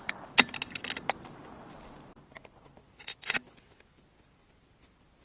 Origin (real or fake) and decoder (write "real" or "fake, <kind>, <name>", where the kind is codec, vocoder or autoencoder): real